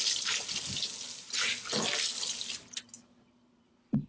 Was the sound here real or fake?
real